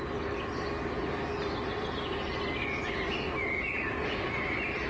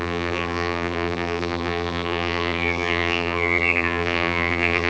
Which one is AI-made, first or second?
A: second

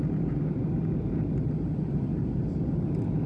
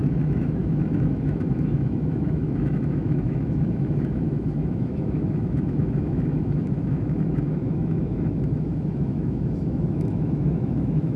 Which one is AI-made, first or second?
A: second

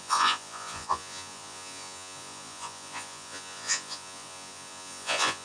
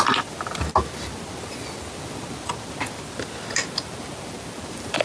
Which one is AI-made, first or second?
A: first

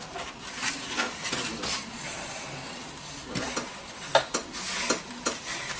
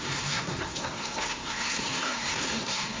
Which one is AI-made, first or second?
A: second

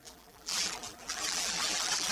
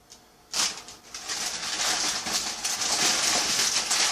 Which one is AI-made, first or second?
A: first